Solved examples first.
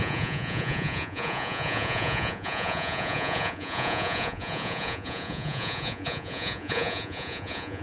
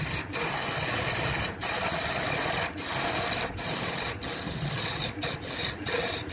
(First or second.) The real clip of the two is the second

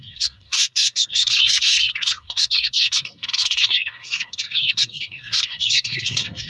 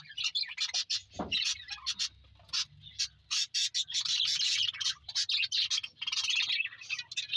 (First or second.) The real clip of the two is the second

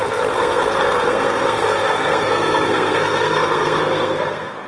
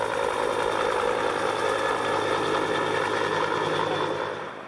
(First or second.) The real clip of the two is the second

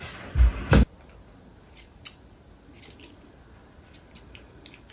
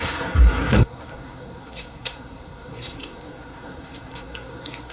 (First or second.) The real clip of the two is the first